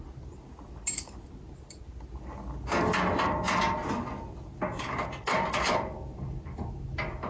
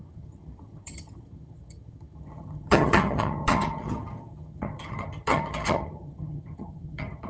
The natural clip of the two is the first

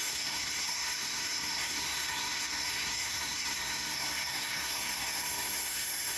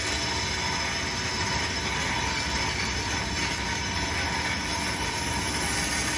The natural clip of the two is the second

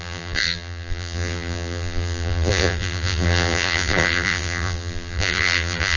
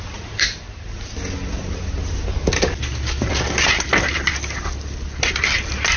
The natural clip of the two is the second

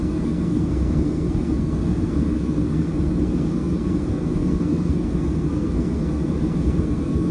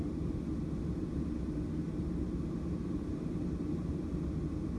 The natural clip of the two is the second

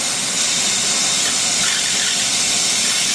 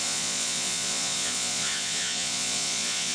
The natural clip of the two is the first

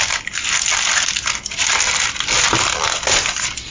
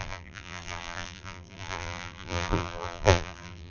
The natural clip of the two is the first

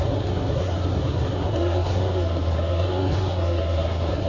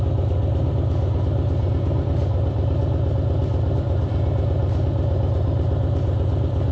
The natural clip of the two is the second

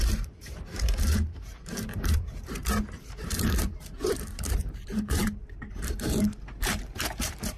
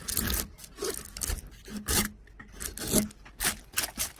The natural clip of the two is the second